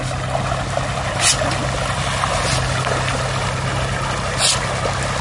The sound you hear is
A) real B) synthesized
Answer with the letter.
A